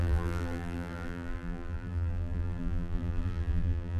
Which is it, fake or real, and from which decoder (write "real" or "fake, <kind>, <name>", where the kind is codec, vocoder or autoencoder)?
fake, vocoder, BigVGAN v2